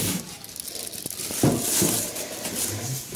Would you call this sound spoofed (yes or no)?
no